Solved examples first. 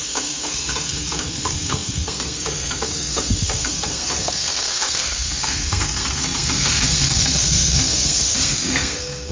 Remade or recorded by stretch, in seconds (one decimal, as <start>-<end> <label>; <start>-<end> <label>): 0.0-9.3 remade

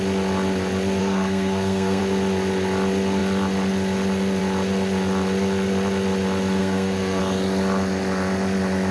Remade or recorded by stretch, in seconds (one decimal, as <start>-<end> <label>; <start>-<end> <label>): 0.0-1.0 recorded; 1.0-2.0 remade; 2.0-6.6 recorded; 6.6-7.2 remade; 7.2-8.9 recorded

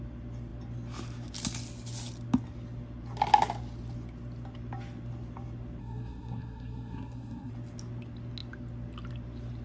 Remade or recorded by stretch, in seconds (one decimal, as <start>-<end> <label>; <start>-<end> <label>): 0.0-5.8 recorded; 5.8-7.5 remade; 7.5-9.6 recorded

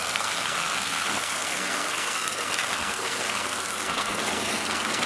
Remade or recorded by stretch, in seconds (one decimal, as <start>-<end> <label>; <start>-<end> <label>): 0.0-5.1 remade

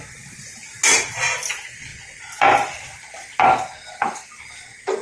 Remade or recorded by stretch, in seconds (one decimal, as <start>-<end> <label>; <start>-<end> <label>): 0.0-5.0 recorded

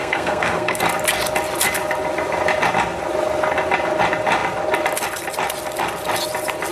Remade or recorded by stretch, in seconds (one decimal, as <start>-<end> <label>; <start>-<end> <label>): 0.0-0.8 remade; 0.8-6.7 recorded

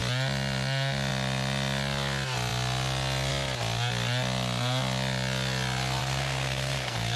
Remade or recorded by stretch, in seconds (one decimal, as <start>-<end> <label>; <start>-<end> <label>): 0.0-6.0 recorded; 6.0-7.2 remade